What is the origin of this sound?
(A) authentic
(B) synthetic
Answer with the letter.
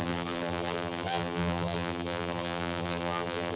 B